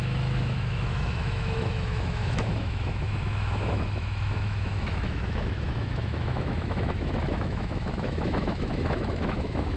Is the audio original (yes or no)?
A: no